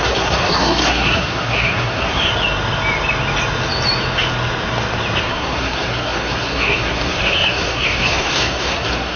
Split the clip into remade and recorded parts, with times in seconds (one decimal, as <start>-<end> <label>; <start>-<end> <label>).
0.0-2.3 remade; 2.3-5.2 recorded; 5.2-9.2 remade